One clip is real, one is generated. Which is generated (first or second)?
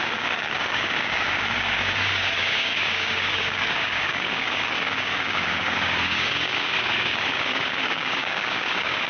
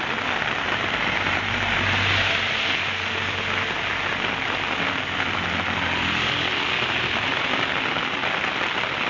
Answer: first